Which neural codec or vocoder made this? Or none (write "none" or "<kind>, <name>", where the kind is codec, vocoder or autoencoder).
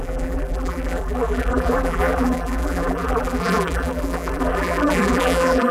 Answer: vocoder, BigVGAN v2